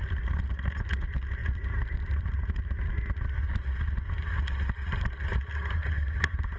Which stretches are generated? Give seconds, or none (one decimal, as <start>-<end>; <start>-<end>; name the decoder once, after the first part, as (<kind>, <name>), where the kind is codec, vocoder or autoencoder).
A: 1.4-2.8 (vocoder, BigVGAN v2)